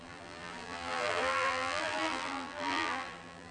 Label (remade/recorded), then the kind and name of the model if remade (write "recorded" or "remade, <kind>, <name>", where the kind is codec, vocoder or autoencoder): remade, vocoder, BigVGAN v2